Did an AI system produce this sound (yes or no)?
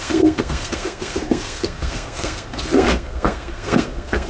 yes